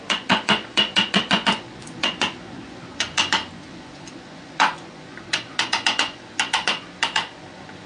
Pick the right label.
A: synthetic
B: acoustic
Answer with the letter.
A